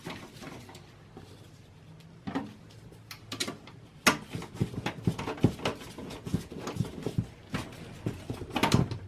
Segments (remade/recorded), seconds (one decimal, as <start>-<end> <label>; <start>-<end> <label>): 0.0-6.0 recorded; 6.0-6.5 remade; 6.5-9.1 recorded